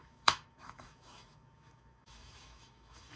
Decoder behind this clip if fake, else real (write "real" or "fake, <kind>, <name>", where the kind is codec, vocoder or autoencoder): fake, autoencoder, DAC-VAE